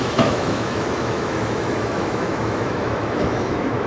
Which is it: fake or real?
fake